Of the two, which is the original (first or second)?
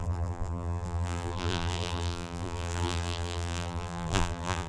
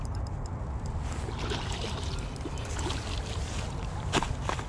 second